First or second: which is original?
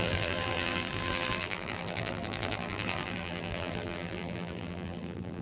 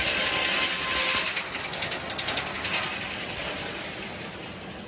second